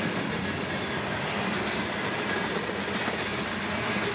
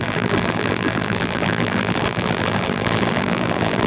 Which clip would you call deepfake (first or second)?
second